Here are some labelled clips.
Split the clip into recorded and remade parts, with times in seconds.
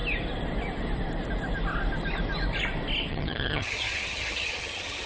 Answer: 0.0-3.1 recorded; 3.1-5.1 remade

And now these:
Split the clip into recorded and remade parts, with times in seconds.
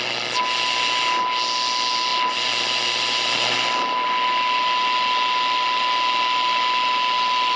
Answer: 0.0-7.6 recorded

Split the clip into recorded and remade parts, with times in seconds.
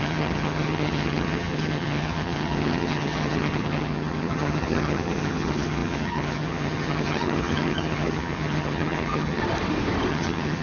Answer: 0.0-9.4 remade; 9.4-10.1 recorded; 10.1-10.6 remade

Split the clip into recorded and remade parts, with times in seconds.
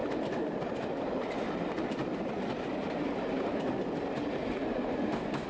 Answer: 0.0-5.5 recorded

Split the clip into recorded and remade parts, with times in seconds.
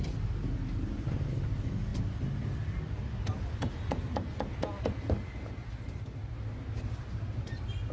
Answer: 0.0-7.9 recorded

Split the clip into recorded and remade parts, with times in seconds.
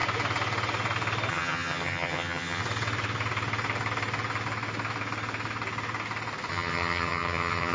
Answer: 0.0-1.3 recorded; 1.3-2.6 remade; 2.6-6.5 recorded; 6.5-7.7 remade